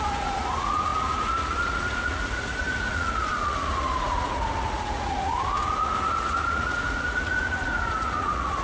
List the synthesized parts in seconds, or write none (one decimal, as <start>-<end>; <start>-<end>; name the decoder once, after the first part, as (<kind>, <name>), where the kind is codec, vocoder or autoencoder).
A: 0.0-8.6 (vocoder, Vocos)